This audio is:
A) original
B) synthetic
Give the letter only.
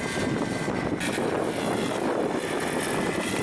A